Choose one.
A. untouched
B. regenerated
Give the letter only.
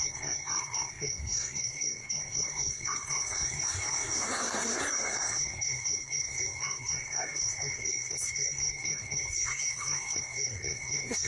B